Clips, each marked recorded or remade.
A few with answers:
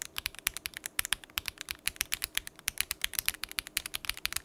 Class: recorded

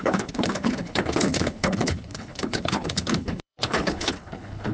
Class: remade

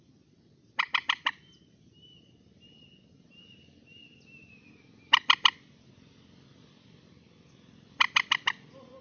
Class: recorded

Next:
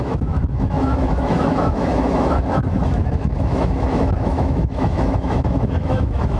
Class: remade